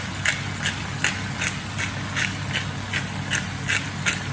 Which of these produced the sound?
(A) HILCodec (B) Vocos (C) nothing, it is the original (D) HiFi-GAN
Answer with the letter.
C